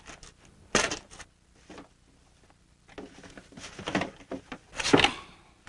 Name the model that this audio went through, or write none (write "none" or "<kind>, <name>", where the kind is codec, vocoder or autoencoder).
none